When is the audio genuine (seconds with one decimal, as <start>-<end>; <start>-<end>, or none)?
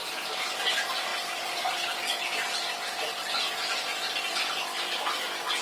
0.0-5.6